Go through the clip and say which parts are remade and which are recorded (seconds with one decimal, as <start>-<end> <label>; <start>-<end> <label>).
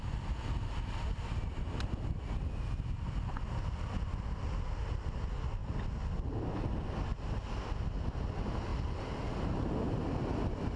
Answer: 0.0-10.8 recorded